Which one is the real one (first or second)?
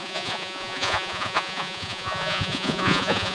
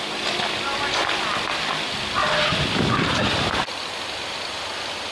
second